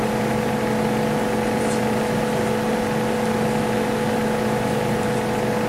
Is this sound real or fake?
real